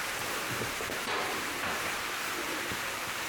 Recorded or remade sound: remade